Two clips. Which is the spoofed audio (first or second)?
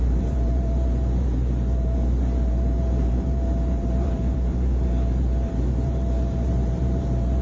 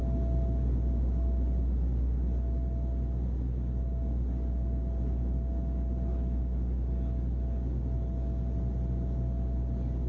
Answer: first